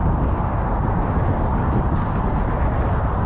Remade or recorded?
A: recorded